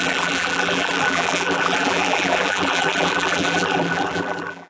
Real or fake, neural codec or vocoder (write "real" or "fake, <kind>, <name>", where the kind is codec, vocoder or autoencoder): fake, vocoder, BigVGAN v2